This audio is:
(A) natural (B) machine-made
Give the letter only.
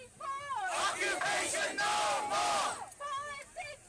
A